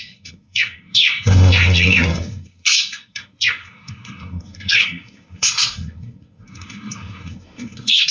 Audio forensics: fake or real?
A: fake